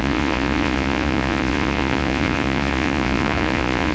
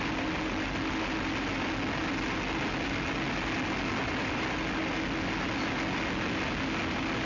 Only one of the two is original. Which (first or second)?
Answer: second